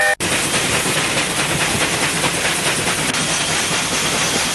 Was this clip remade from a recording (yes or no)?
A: no